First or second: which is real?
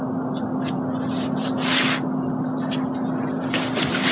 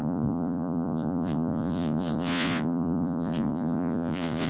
first